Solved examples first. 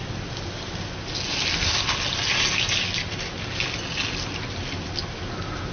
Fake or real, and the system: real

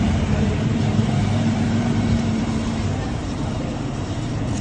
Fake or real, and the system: fake, vocoder, BigVGAN v2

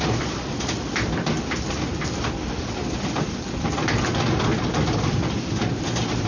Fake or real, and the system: real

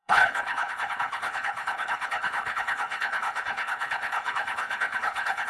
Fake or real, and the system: fake, codec, HILCodec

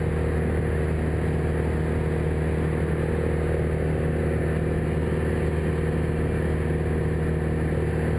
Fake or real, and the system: real